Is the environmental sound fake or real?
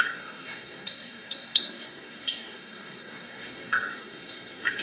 fake